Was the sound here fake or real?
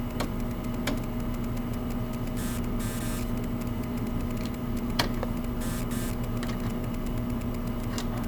real